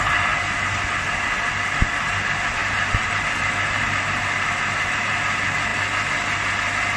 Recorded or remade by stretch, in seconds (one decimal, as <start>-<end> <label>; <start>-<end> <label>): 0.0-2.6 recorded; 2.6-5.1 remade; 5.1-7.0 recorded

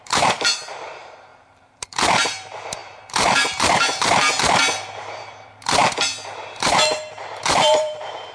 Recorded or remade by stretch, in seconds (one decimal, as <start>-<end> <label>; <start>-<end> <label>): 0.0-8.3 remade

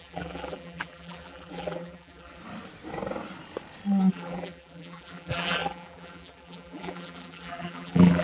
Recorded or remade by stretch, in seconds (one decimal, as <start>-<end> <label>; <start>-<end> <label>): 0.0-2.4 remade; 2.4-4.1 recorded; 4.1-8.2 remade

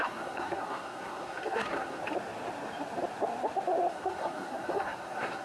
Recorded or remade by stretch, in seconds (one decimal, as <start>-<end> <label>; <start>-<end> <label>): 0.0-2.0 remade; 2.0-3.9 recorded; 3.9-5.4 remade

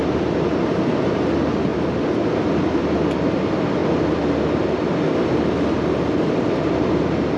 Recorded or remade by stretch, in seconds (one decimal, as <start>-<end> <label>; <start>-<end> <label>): 0.0-7.4 recorded

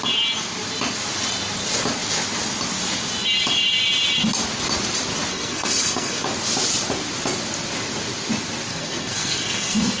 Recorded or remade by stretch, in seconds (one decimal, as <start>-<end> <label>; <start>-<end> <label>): 0.0-5.3 recorded; 5.3-6.2 remade; 6.2-8.7 recorded; 8.7-10.0 remade